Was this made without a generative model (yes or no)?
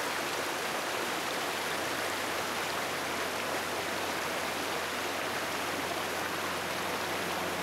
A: no